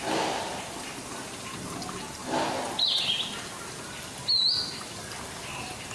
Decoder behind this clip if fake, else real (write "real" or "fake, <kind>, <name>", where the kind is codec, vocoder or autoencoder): real